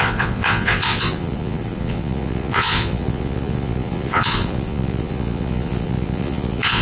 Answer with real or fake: fake